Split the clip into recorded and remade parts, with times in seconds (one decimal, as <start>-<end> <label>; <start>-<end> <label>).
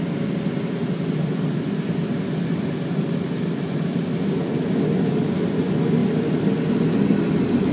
0.0-7.7 recorded